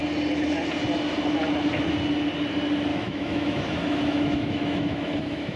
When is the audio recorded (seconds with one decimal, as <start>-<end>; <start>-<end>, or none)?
0.0-2.9